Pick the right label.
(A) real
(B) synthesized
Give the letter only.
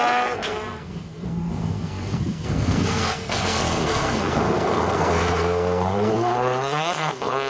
B